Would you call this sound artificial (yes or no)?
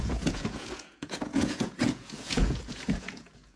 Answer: yes